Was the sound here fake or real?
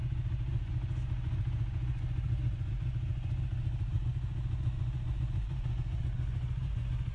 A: fake